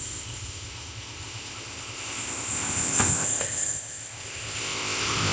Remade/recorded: remade